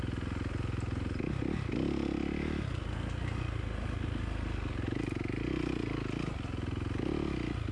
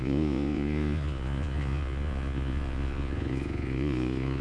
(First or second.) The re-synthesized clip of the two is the second